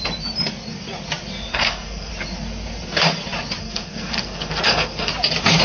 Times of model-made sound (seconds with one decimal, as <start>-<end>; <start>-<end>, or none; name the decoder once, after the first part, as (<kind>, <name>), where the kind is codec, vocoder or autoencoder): 1.5-2.1 (codec, SNAC); 3.6-5.1